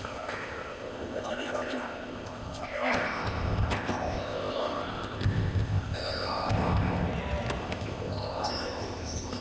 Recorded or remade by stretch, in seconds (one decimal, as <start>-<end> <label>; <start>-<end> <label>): 0.0-7.1 remade; 7.1-7.6 recorded; 7.6-9.4 remade